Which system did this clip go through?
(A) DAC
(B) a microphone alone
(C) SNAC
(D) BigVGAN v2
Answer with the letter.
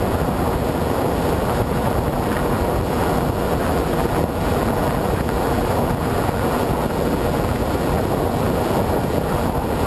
D